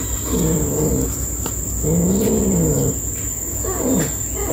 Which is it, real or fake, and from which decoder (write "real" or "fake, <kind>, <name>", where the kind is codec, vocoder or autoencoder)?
real